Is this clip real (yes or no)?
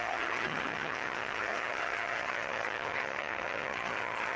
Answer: no